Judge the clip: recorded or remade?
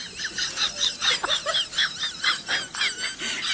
recorded